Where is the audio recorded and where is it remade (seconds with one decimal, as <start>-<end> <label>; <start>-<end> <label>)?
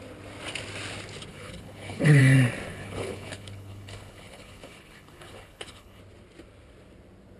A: 0.0-1.3 recorded; 1.3-2.2 remade; 2.2-2.7 recorded; 2.7-6.0 remade; 6.0-7.4 recorded